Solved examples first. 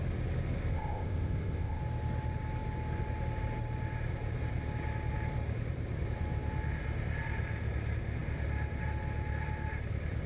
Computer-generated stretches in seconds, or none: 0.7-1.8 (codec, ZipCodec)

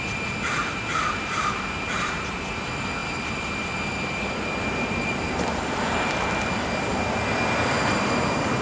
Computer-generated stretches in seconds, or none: 0.0-6.9 (vocoder, BigVGAN v2); 7.7-8.6